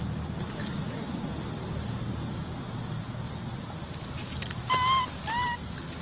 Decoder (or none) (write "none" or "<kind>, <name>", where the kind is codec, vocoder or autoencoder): none